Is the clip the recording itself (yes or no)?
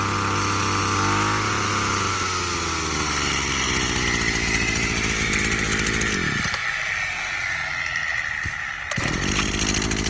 yes